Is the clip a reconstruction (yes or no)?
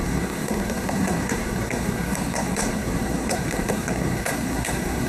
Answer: yes